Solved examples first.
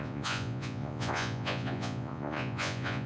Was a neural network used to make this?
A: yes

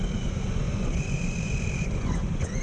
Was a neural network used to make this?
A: yes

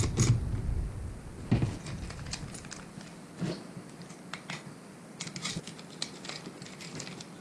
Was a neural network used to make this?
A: no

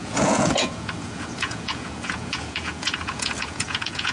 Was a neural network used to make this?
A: yes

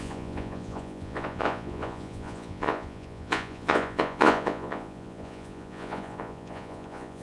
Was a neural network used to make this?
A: yes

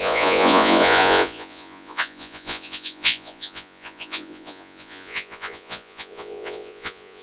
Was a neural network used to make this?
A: yes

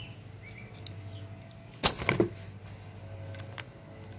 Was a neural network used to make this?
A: no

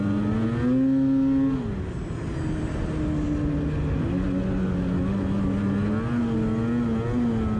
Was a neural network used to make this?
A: no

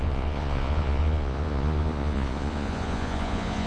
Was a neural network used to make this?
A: yes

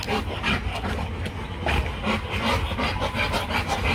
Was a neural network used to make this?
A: no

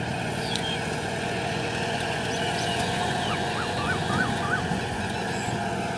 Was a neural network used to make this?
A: yes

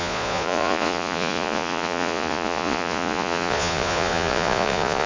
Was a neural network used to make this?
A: yes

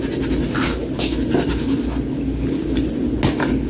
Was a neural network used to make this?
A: no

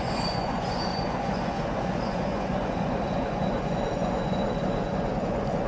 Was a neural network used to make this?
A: yes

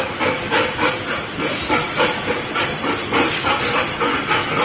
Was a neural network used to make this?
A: no